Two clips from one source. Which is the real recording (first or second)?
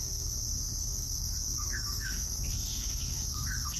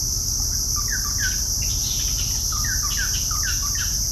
second